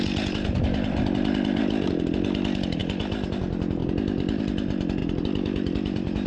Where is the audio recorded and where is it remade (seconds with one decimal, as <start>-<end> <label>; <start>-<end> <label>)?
0.0-2.8 recorded; 2.8-3.4 remade; 3.4-5.0 recorded; 5.0-6.3 remade